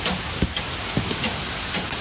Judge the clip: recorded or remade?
recorded